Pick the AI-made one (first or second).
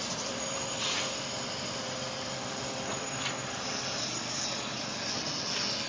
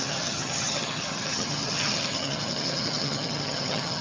second